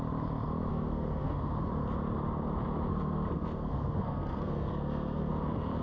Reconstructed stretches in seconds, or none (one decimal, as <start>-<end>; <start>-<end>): 0.7-1.6; 2.9-5.3